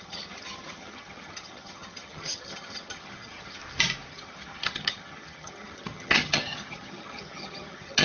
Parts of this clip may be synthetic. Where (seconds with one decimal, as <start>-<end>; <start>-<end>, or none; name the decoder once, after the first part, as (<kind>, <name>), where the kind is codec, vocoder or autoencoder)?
0.0-3.6 (vocoder, HiFi-GAN); 4.1-8.0